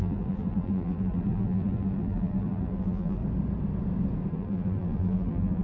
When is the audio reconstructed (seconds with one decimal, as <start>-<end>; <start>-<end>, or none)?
0.0-3.2; 4.3-5.6